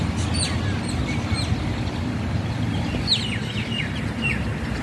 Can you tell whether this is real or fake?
real